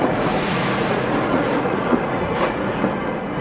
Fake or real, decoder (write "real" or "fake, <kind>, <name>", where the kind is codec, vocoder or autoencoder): fake, vocoder, Vocos